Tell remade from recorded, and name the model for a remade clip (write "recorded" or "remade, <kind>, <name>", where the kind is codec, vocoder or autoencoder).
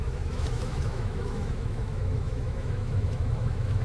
remade, autoencoder, DAC-VAE